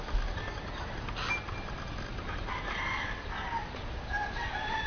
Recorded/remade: recorded